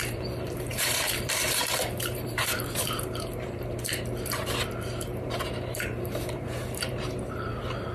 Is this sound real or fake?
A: fake